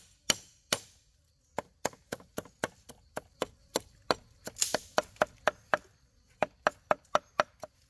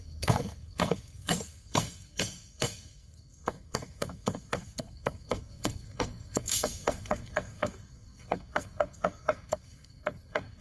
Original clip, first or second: first